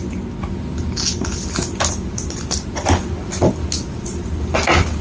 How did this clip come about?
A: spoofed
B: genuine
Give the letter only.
B